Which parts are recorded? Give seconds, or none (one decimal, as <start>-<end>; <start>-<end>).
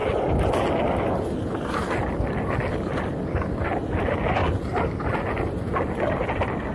0.0-6.7